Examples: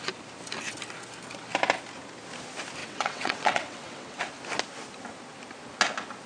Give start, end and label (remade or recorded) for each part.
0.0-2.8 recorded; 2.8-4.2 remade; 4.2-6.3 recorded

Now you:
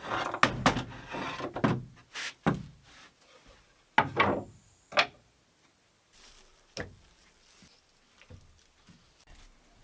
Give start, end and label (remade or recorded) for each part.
0.0-9.8 recorded

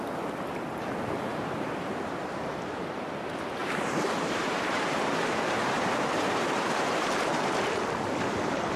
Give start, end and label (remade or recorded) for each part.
0.0-1.3 recorded; 1.3-1.9 remade; 1.9-3.6 recorded; 3.6-7.8 remade; 7.8-8.8 recorded

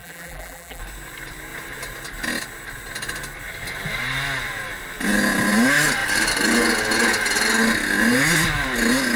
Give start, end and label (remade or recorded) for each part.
0.0-0.8 remade; 0.8-9.2 recorded

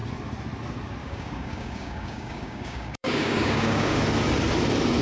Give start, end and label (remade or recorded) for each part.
0.0-1.0 recorded; 1.0-4.0 remade; 4.0-5.0 recorded